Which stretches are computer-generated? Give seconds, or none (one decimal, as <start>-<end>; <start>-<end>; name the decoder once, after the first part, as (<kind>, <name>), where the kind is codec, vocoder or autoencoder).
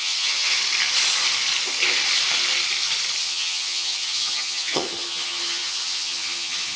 0.0-0.6 (vocoder, HiFi-GAN); 3.2-6.8